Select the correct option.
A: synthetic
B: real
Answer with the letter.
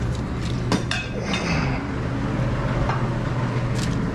B